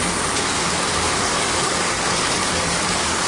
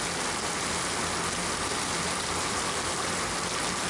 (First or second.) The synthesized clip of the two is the first